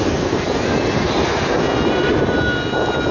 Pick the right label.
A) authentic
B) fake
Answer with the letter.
A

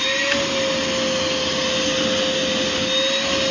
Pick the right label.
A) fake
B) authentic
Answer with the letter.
B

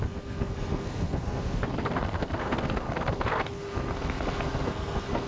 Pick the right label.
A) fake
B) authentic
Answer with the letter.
A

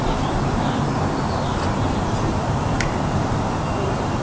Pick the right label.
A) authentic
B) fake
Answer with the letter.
A